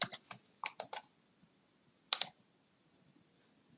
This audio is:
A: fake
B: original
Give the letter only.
B